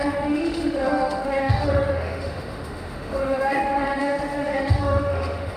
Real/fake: fake